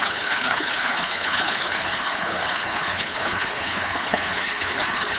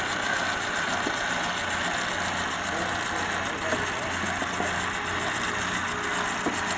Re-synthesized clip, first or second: first